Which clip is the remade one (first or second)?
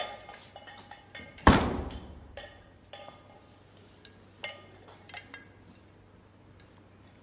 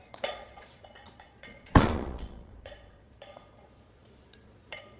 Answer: second